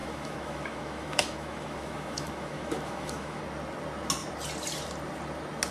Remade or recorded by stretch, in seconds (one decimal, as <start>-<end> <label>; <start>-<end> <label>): 0.0-3.4 remade; 3.4-5.7 recorded